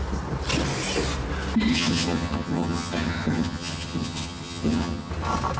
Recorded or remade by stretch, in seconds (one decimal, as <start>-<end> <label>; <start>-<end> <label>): 0.0-1.7 recorded; 1.7-5.1 remade; 5.1-5.6 recorded